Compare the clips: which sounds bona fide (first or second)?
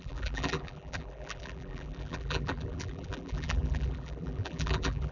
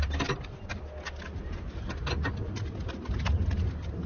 second